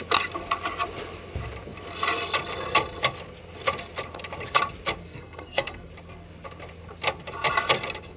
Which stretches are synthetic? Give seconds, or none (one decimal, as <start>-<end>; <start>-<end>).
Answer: 5.0-5.9